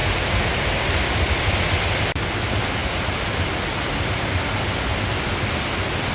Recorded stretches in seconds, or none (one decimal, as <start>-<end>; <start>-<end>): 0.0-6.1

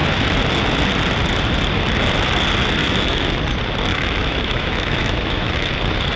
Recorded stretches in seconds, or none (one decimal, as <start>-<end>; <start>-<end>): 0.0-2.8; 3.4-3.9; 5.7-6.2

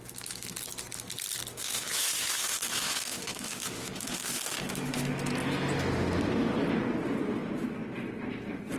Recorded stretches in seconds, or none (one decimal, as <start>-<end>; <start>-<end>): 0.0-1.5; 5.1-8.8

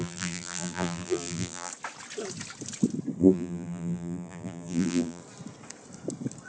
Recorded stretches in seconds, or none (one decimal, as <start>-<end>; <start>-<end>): 1.7-3.2; 5.2-6.5

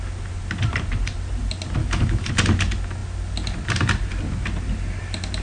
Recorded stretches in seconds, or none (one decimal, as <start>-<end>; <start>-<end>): 0.0-1.8; 2.3-5.4